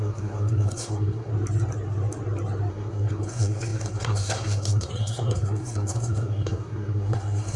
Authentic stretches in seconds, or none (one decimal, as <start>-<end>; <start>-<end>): 1.3-2.7